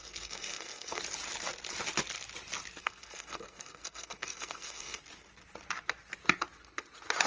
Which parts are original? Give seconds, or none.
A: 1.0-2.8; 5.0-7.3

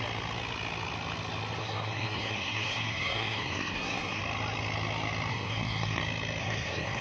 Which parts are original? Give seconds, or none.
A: 0.0-1.6; 4.2-5.3; 6.0-6.4

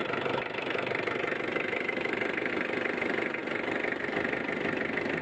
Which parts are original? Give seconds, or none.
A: none